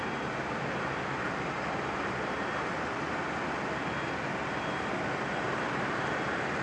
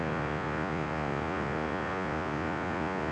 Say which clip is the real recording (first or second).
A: first